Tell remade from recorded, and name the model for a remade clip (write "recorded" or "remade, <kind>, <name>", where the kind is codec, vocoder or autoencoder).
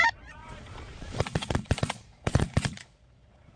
remade, vocoder, Vocos